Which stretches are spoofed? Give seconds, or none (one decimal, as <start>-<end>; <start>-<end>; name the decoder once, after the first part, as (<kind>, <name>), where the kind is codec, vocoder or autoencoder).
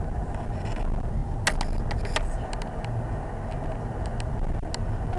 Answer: none